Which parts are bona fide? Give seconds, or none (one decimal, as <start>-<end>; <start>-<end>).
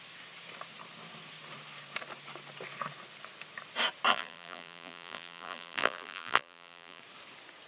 0.0-4.1; 7.0-7.7